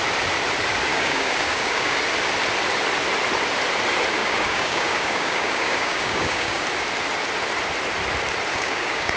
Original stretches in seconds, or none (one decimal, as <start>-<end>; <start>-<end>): 0.0-0.9; 2.0-4.2; 6.6-8.5

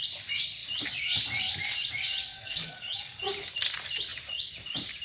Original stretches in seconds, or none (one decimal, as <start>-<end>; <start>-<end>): 0.0-2.3; 3.2-5.0

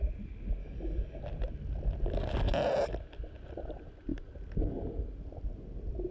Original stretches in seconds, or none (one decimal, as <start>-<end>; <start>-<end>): 0.0-0.6; 1.2-6.1

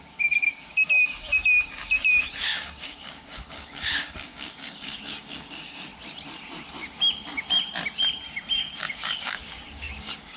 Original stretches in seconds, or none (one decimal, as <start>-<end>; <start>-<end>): 5.9-8.8